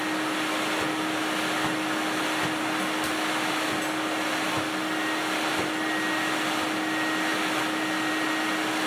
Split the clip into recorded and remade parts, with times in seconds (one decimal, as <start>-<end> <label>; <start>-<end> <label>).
0.0-8.9 recorded